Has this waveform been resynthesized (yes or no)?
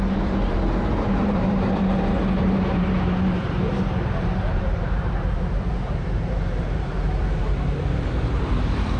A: yes